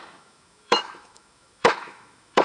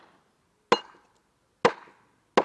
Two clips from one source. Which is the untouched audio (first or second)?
second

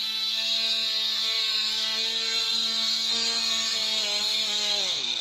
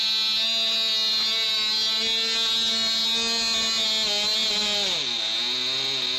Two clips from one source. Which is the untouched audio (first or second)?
second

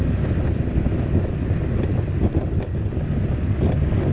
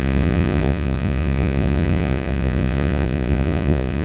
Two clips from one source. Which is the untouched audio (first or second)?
first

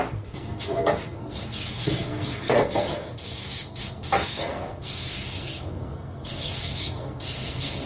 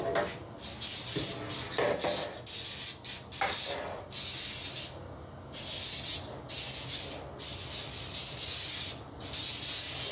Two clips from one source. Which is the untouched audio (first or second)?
second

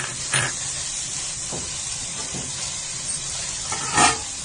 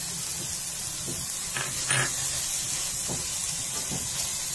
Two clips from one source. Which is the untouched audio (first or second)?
second